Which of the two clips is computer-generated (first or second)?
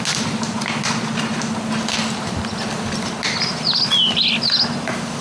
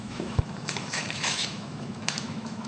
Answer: second